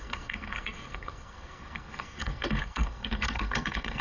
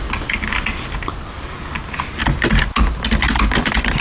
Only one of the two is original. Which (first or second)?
second